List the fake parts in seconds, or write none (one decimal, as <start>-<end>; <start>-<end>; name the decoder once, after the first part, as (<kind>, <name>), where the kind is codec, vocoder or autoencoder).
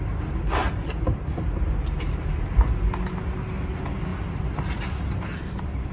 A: 0.6-2.0 (vocoder, BigVGAN v2); 4.1-5.9